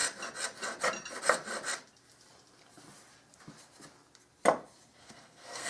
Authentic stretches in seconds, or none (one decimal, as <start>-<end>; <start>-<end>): 0.0-5.0